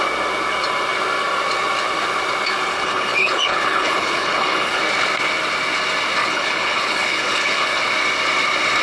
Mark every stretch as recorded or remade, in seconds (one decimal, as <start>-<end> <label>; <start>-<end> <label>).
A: 0.0-2.7 recorded; 2.7-4.8 remade; 4.8-6.2 recorded; 6.2-7.8 remade; 7.8-8.8 recorded